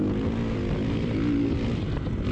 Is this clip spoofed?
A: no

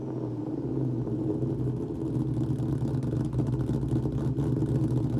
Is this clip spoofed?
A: no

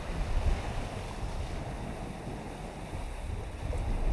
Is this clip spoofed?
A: no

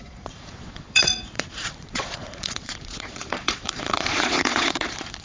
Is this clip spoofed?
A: yes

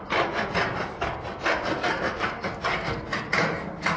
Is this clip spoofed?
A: no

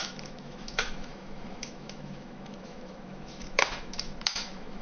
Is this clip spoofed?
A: yes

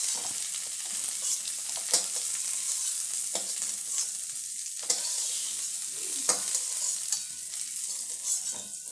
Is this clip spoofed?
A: no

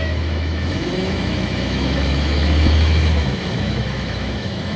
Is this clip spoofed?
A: yes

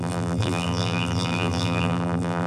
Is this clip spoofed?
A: yes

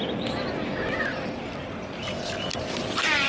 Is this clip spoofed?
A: no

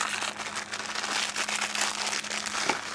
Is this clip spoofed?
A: no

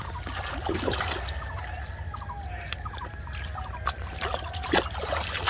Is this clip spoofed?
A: no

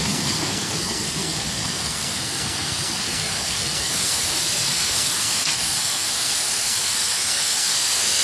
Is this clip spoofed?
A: yes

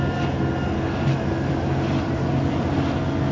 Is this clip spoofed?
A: no